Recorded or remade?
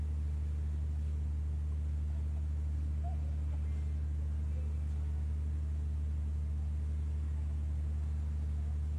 recorded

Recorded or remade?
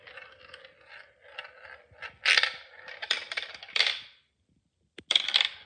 recorded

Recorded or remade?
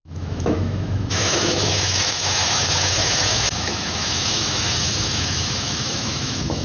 remade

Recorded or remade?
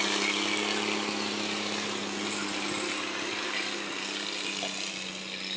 recorded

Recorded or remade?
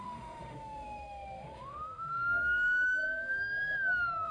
remade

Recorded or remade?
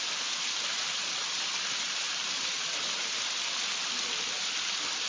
recorded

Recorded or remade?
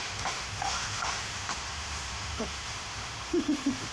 remade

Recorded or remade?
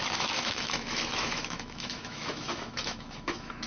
remade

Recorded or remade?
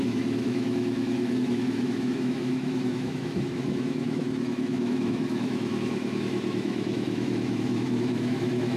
remade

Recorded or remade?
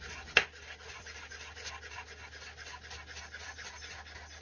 recorded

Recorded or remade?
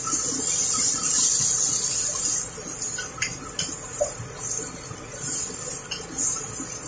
recorded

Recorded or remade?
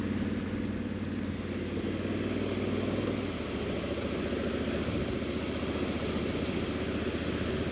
recorded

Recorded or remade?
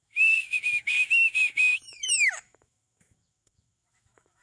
remade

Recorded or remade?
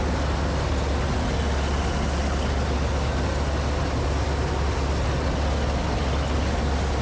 recorded